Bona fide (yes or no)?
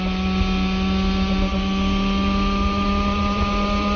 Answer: yes